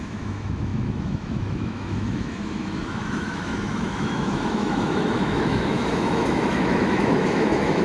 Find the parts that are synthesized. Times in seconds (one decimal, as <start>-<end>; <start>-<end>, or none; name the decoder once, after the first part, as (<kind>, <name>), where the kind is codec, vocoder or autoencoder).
0.0-7.8 (autoencoder, DAC-VAE)